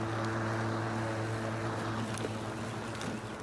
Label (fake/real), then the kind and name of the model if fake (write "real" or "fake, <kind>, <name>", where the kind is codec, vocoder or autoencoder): real